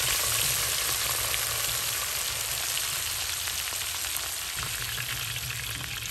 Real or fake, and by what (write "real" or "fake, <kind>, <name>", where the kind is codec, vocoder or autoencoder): real